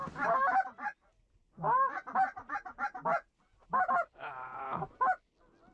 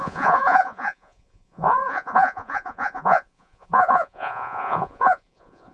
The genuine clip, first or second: first